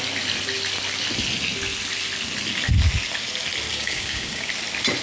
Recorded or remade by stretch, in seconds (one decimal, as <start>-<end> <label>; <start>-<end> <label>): 0.0-3.7 recorded; 3.7-4.5 remade; 4.5-5.0 recorded